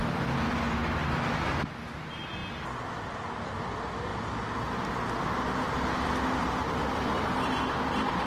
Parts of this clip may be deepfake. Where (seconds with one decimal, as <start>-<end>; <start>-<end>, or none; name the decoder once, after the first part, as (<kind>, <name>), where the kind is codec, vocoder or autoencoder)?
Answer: none